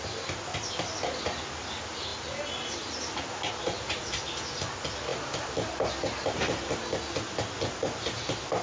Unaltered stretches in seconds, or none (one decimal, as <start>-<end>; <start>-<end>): 0.0-8.6

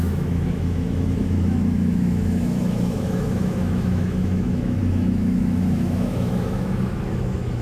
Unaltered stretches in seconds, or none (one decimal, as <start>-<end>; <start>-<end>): none

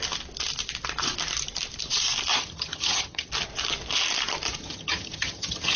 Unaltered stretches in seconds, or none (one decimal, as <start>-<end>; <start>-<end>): 0.0-2.3; 3.3-4.6

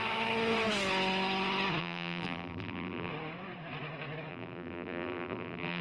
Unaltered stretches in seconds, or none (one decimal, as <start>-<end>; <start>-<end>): 0.0-1.8; 3.1-4.3